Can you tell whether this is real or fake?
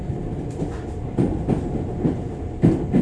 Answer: real